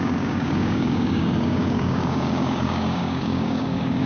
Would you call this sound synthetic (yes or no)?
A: yes